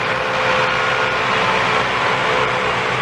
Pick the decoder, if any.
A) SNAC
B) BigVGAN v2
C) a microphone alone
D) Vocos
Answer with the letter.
C